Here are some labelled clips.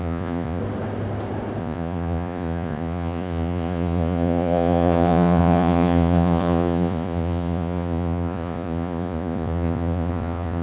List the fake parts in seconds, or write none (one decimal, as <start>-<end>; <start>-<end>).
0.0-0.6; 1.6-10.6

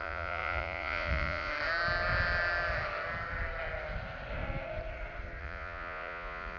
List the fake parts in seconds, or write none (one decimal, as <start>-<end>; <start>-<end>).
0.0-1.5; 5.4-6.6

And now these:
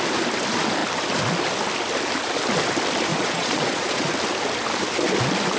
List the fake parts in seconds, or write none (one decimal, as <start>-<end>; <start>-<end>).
3.1-4.1

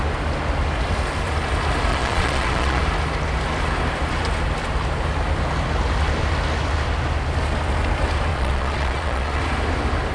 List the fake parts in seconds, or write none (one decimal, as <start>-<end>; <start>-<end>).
1.9-2.8; 8.3-9.4

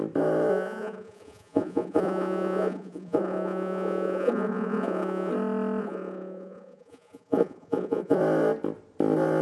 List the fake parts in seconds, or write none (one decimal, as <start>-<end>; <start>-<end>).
0.5-5.3; 5.8-8.2